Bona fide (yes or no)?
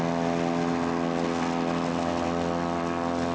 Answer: yes